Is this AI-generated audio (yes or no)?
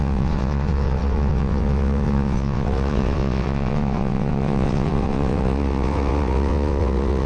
yes